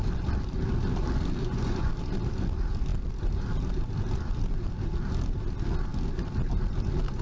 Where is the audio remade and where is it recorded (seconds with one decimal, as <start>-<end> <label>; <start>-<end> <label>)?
0.0-1.4 recorded; 1.4-1.9 remade; 1.9-7.2 recorded